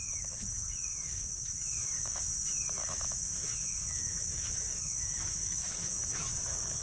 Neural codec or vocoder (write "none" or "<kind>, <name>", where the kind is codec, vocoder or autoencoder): autoencoder, DAC-VAE